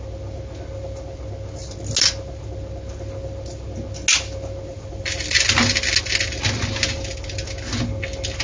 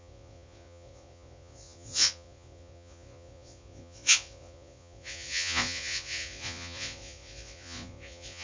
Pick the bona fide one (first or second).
first